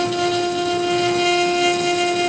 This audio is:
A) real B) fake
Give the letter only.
A